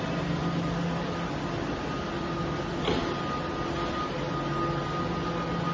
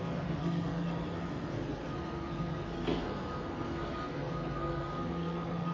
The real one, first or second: first